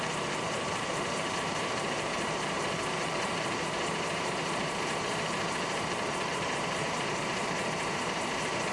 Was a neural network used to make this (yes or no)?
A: yes